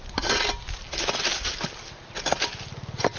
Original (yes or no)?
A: yes